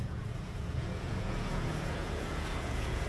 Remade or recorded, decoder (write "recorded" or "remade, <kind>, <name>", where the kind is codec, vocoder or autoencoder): remade, vocoder, Vocos